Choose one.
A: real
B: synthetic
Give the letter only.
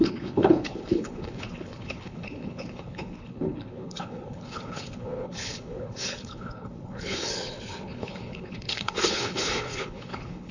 B